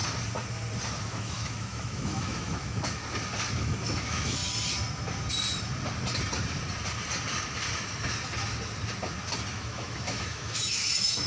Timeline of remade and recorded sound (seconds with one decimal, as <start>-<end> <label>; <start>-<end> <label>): 0.0-1.1 recorded; 1.1-3.0 remade; 3.0-3.6 recorded; 3.6-4.4 remade; 4.4-9.5 recorded; 9.5-11.3 remade